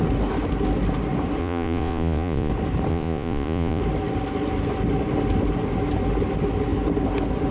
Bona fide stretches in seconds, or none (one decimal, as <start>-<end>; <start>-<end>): 0.0-1.4; 2.5-2.9; 3.8-7.5